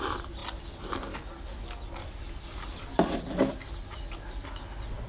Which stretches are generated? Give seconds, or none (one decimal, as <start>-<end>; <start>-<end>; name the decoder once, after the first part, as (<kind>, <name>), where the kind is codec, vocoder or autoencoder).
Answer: none